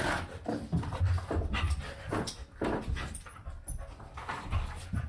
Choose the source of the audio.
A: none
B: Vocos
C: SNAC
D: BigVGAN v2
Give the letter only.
A